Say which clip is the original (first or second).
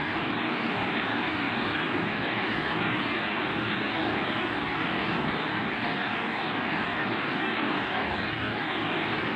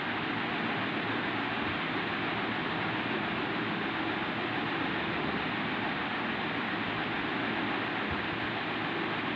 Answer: second